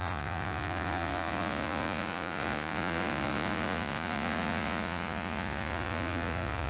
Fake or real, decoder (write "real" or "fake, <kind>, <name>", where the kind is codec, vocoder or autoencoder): fake, vocoder, Vocos